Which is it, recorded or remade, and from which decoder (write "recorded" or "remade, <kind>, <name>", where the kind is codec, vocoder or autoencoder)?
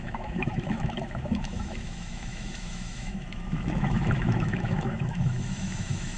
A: remade, autoencoder, DAC-VAE